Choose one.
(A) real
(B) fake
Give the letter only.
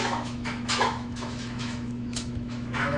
B